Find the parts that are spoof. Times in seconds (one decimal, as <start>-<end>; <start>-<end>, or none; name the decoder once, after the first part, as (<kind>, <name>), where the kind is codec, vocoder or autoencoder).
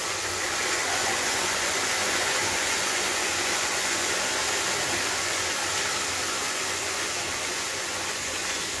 0.0-4.4 (vocoder, Vocos); 5.0-5.6; 6.3-8.8